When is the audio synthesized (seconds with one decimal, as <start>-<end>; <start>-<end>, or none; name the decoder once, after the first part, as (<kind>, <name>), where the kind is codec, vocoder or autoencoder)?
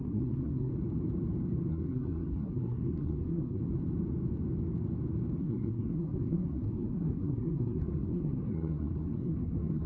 0.0-0.7 (codec, SNAC); 1.7-3.6; 5.4-9.9